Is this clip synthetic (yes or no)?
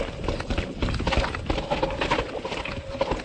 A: no